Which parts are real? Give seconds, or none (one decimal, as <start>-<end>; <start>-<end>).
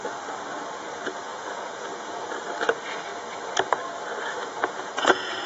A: 0.0-1.3; 2.3-4.4